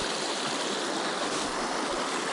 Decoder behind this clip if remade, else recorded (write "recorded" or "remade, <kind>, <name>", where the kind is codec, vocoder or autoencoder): recorded